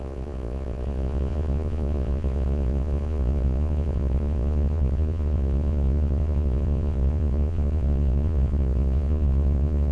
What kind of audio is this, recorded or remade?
remade